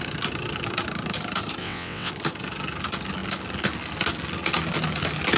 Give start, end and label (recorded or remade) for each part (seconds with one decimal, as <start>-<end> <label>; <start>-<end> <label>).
0.0-1.6 recorded; 1.6-2.1 remade; 2.1-5.4 recorded